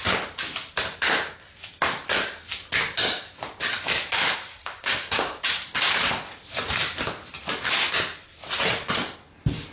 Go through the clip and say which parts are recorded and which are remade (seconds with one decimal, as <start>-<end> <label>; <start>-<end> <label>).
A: 0.0-4.5 recorded; 4.5-5.4 remade; 5.4-9.7 recorded